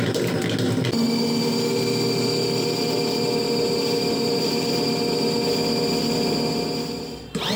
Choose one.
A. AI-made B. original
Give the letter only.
B